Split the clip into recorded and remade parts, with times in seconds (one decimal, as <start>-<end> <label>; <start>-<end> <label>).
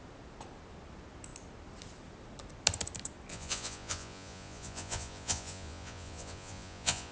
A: 0.0-3.3 recorded; 3.3-7.1 remade